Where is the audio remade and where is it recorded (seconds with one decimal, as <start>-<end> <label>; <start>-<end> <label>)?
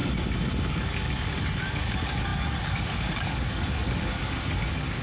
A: 0.0-0.7 recorded; 0.7-5.0 remade